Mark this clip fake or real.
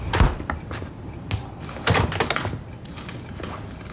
real